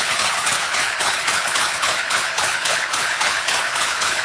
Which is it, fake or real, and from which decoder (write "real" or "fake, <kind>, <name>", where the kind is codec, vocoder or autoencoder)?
fake, codec, HILCodec